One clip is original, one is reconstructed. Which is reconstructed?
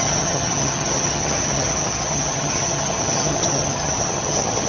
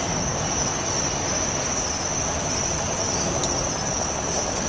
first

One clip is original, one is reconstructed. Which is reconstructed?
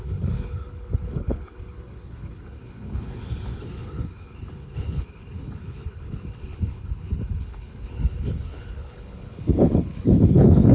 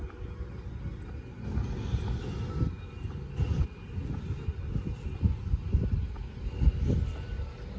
first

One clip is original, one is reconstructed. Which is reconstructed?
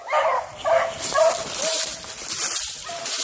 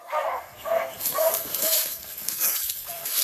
second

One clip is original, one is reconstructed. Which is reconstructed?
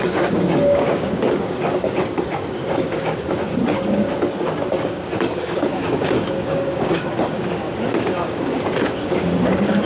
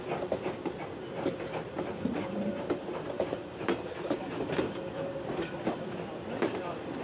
first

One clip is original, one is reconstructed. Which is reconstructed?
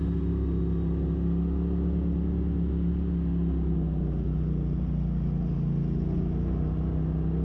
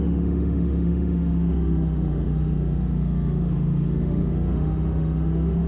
second